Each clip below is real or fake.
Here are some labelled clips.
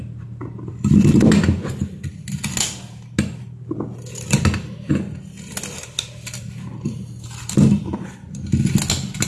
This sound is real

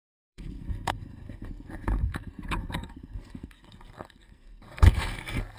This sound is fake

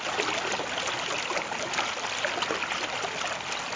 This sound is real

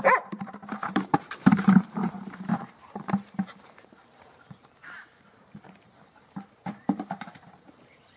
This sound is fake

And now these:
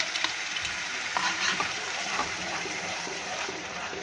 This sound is fake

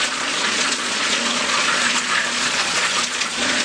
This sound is fake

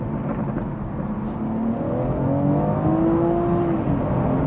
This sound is real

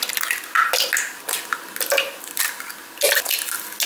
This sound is real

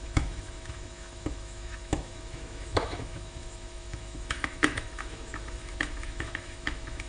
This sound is fake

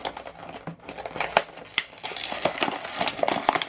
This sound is real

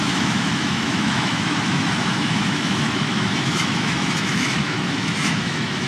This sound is fake